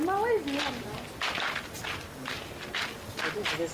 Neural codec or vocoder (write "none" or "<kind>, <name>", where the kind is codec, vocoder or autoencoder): none